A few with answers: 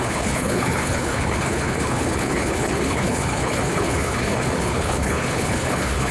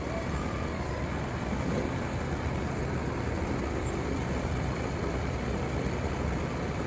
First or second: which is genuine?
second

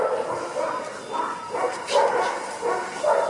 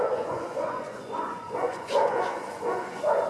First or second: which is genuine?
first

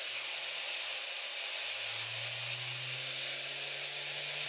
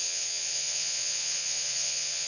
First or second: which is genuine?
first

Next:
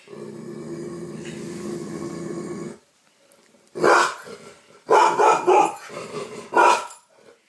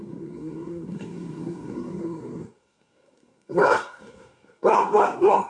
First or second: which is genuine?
first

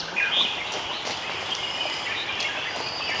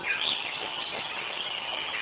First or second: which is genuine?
first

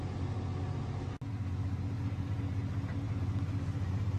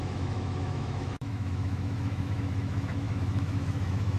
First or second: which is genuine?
first